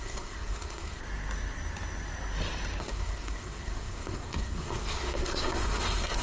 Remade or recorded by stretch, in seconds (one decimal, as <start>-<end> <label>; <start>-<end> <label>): 0.0-1.0 remade; 1.0-2.8 recorded; 2.8-6.2 remade